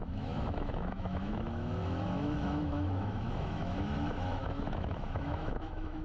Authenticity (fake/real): fake